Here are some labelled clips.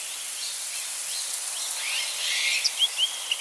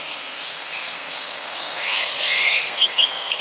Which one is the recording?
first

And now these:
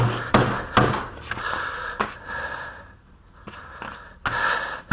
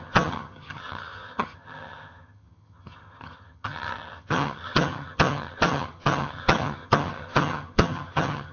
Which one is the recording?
first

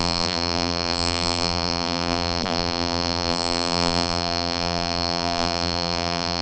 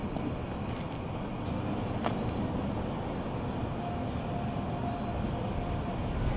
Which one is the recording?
second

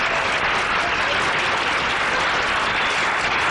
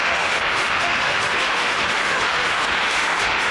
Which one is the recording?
first